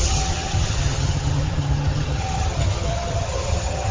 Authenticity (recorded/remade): remade